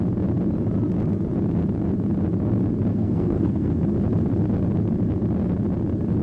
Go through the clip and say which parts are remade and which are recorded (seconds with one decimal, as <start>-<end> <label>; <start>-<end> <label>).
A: 0.0-2.9 recorded; 2.9-3.8 remade; 3.8-6.2 recorded

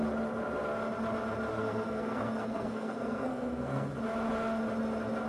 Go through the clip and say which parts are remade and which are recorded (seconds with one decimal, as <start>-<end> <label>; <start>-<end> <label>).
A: 0.0-1.5 recorded; 1.5-3.9 remade; 3.9-5.3 recorded

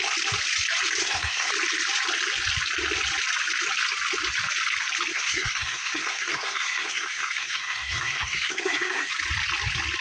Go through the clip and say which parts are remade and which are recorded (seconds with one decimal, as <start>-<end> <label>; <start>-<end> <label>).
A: 0.0-1.0 recorded; 1.0-1.5 remade; 1.5-5.1 recorded; 5.1-9.1 remade; 9.1-10.0 recorded

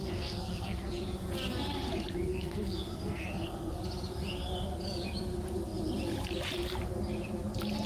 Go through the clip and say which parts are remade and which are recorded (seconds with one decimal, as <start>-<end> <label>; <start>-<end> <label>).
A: 0.0-0.9 remade; 0.9-2.3 recorded; 2.3-3.8 remade; 3.8-7.9 recorded